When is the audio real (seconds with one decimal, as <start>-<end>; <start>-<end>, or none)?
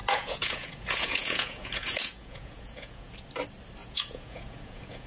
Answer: 3.1-3.8